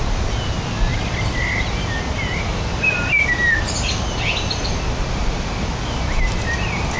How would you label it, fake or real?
real